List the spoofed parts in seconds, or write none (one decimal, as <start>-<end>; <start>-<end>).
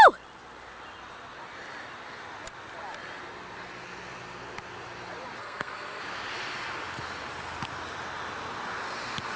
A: 5.4-6.0